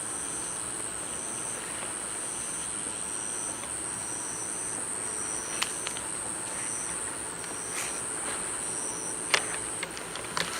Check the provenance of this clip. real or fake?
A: real